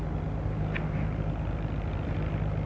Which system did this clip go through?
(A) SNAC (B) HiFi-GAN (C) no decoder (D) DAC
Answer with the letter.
C